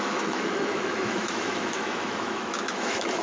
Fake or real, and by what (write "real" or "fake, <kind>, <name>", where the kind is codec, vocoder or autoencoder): fake, autoencoder, DAC-VAE